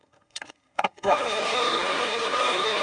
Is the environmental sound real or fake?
fake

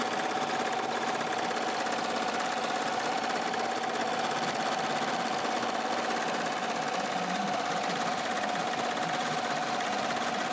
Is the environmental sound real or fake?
real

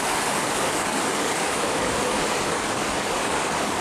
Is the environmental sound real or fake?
fake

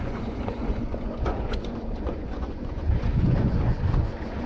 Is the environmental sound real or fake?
fake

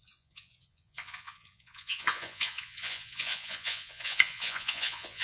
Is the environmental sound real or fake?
fake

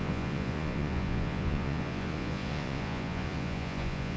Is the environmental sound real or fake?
fake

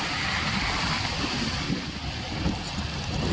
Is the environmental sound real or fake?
real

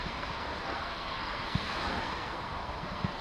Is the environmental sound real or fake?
fake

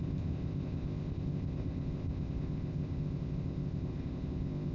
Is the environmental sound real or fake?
fake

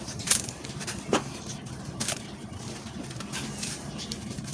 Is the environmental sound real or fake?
fake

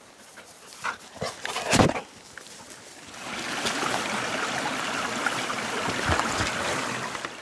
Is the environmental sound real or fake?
real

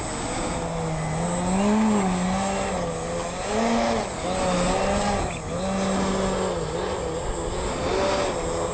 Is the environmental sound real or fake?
real